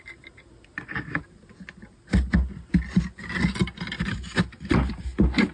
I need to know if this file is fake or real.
real